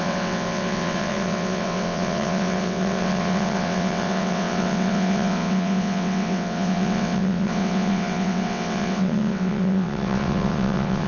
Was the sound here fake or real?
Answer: fake